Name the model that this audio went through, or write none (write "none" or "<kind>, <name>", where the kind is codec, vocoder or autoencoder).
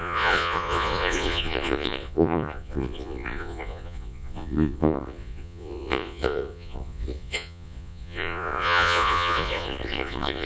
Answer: vocoder, Vocos